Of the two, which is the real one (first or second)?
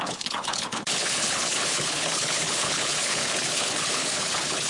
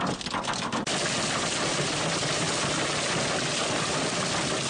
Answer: second